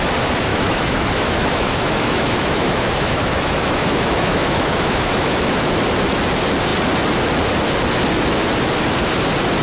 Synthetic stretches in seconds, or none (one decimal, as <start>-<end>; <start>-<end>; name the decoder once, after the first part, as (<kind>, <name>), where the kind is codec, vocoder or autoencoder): 0.5-5.5 (autoencoder, DAC-VAE)